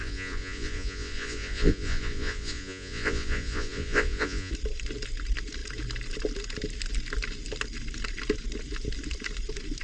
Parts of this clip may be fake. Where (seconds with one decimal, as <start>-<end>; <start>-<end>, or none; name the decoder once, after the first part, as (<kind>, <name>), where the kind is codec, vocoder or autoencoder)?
0.0-4.5 (vocoder, Vocos)